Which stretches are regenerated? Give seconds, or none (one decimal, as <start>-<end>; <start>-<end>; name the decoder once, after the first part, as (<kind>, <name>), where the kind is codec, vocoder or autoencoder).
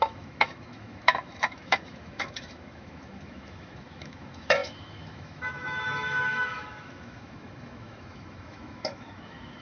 0.0-9.6 (autoencoder, DAC-VAE)